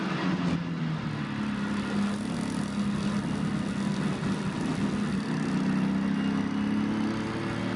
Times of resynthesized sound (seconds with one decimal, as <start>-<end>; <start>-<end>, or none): none